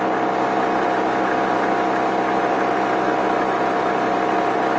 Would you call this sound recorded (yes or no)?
yes